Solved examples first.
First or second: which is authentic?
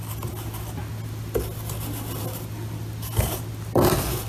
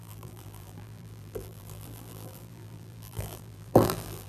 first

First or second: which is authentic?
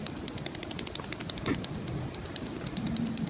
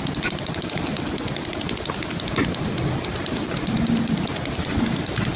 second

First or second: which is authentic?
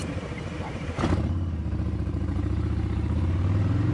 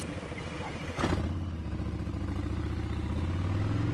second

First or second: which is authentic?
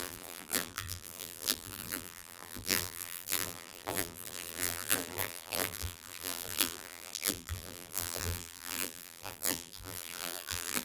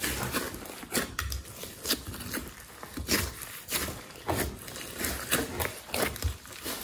second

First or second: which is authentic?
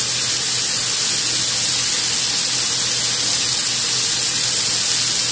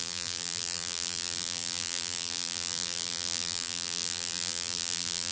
first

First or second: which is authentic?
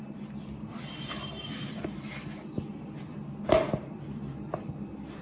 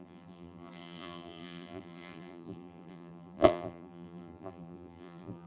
first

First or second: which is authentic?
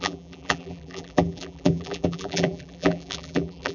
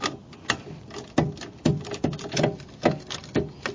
second